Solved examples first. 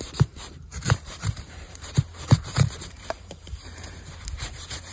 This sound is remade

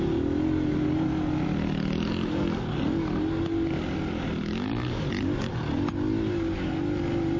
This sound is recorded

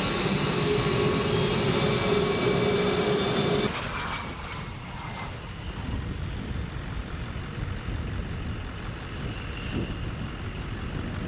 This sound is recorded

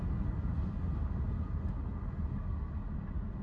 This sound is recorded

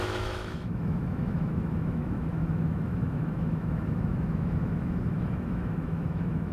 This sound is remade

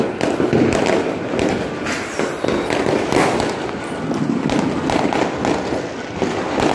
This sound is recorded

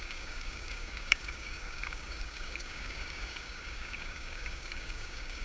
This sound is remade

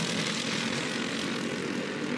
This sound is recorded